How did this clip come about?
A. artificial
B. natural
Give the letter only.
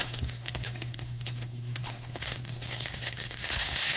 A